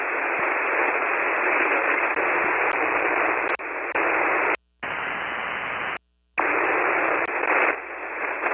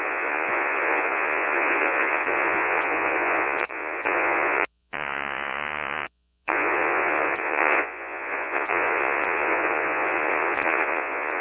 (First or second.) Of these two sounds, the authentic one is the first